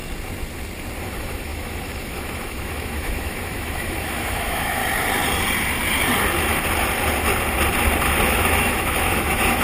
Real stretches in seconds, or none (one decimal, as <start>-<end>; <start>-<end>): 0.0-1.0; 4.8-8.2